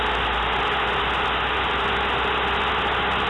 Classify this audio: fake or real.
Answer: real